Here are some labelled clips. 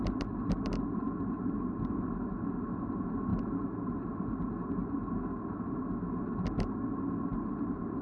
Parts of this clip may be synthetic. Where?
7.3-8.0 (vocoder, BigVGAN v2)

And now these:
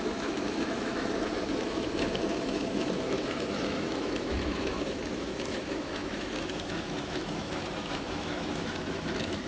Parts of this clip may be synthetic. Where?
0.0-9.5 (autoencoder, DAC-VAE)